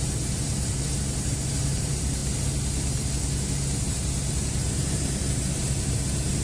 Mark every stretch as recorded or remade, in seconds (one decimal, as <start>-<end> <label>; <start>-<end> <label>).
0.0-2.2 remade; 2.2-3.9 recorded; 3.9-6.4 remade